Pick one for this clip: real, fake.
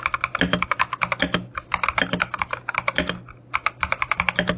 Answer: real